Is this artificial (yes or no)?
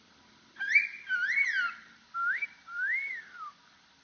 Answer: yes